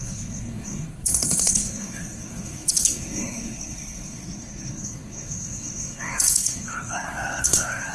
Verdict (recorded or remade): remade